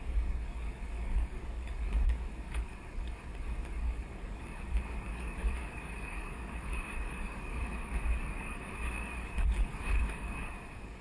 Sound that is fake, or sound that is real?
fake